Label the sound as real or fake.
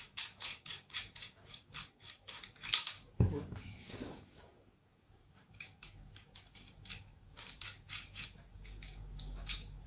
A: fake